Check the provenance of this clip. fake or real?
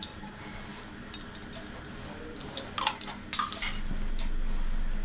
real